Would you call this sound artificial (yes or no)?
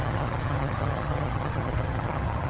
yes